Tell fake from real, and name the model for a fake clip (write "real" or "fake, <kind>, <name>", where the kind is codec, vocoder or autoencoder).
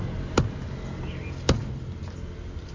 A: real